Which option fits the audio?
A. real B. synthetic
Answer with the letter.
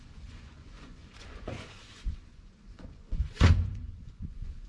B